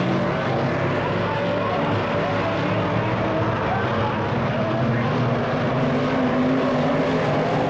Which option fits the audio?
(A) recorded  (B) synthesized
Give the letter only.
A